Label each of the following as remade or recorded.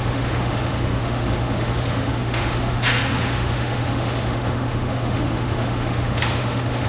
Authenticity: remade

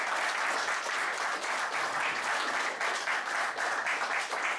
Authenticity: recorded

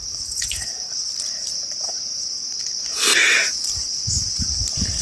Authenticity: remade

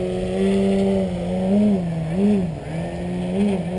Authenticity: recorded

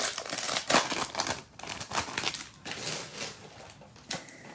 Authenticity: recorded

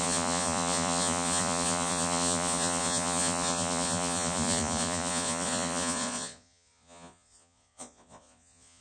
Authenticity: remade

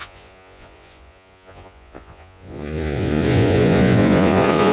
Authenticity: remade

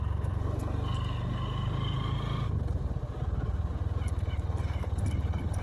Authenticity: recorded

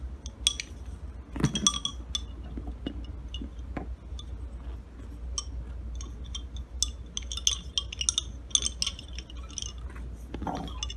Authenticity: recorded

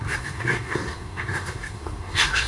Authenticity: remade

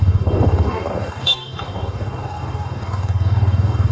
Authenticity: remade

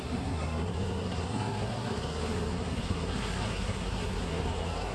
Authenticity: remade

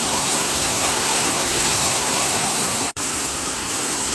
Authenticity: remade